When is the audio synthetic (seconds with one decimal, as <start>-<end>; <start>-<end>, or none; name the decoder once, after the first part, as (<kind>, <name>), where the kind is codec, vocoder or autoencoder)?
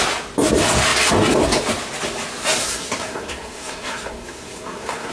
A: 2.6-5.1 (codec, SNAC)